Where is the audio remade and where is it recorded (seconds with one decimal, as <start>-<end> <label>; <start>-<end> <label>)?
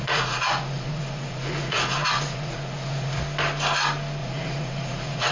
0.0-3.2 remade; 3.2-4.2 recorded; 4.2-5.3 remade